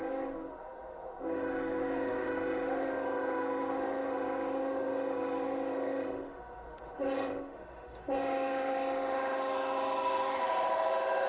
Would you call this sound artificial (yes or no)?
yes